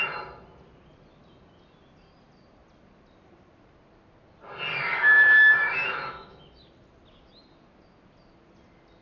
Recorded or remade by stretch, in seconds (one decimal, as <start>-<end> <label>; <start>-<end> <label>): 0.0-4.7 recorded; 4.7-6.4 remade; 6.4-9.0 recorded